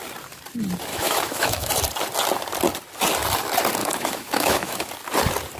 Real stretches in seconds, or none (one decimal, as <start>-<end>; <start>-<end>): 0.0-0.9; 1.7-3.8; 4.9-5.6